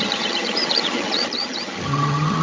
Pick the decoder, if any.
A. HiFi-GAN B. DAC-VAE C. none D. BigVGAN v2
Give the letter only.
A